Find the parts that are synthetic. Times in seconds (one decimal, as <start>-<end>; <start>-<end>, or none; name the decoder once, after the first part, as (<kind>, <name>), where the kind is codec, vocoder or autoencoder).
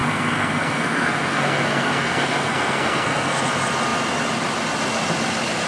0.0-3.4 (codec, SNAC)